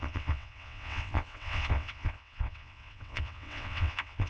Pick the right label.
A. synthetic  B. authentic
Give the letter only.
A